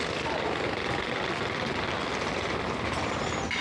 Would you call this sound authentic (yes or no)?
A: yes